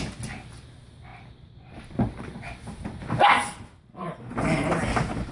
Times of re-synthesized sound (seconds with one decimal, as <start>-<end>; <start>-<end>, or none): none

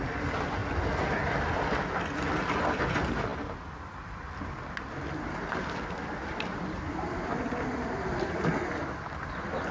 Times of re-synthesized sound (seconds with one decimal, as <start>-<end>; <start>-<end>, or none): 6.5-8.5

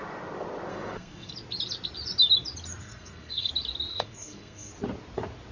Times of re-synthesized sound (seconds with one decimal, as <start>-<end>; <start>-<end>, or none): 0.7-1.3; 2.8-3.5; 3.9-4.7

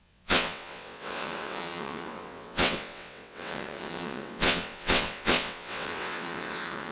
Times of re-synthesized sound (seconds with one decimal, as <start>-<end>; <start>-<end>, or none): 0.0-6.9

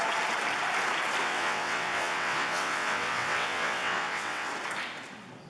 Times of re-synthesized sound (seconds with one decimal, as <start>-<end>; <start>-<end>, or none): 1.2-4.5

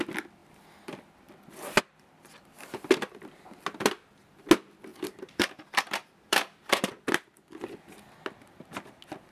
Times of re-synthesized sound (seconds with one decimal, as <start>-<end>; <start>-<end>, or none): 4.9-6.9

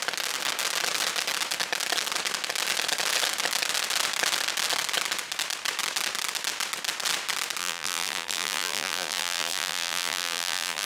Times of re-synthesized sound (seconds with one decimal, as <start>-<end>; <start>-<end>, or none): 7.6-10.9